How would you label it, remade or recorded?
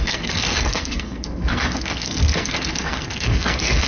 remade